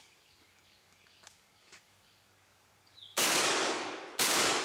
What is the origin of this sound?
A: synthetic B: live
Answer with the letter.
A